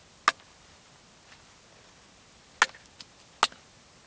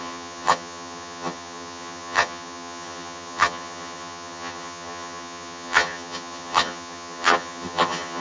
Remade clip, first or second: second